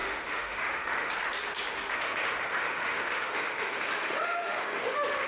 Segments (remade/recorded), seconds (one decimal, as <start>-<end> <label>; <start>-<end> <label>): 0.0-1.1 remade; 1.1-1.9 recorded; 1.9-5.3 remade